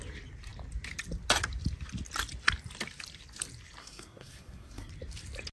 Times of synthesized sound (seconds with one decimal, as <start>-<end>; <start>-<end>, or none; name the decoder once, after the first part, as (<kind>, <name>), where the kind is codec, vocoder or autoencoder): 3.8-4.9 (codec, SNAC)